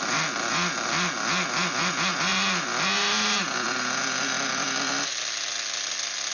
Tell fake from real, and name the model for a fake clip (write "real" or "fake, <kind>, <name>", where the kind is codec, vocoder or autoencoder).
real